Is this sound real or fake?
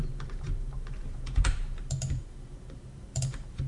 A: fake